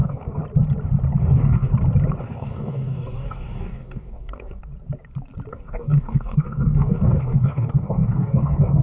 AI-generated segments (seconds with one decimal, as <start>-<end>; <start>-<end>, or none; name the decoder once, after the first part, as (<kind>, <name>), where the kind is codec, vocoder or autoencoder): 0.0-0.4 (codec, DAC); 1.2-1.7; 2.2-4.6; 5.5-8.8